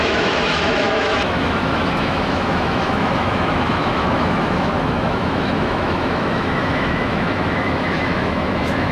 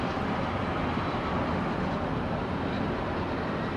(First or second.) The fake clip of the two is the first